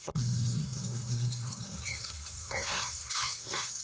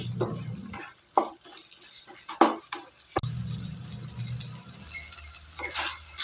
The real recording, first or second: second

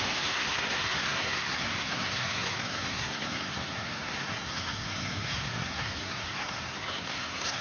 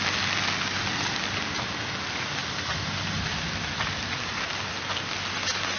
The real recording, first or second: second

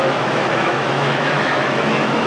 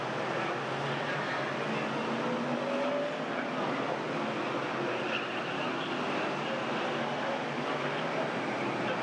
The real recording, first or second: second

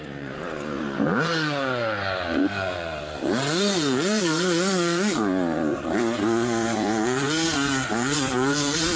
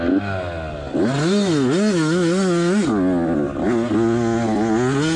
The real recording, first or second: second